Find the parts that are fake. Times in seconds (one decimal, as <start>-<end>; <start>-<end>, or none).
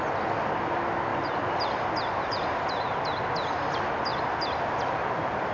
1.1-3.2; 4.1-5.5